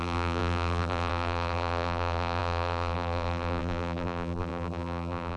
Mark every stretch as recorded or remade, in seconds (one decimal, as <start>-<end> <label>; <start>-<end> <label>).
0.0-5.4 remade